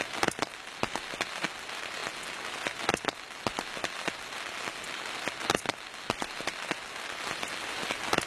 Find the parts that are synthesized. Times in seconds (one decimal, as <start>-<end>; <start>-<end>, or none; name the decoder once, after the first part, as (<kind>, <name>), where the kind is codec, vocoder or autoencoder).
none